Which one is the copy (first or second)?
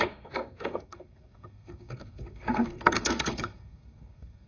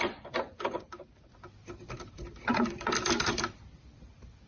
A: first